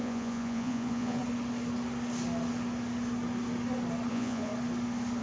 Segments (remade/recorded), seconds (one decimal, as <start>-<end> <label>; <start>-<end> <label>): 0.0-1.2 remade; 1.2-4.1 recorded; 4.1-4.5 remade; 4.5-5.2 recorded

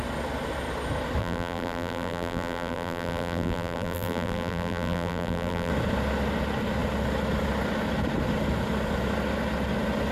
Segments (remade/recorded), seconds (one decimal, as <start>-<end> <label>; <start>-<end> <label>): 0.0-1.2 recorded; 1.2-5.7 remade; 5.7-10.1 recorded

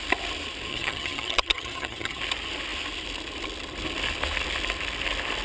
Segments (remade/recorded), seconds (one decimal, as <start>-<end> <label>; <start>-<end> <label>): 0.0-0.7 recorded; 0.7-2.2 remade; 2.2-5.4 recorded